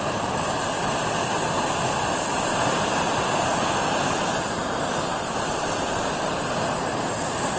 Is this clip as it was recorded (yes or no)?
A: yes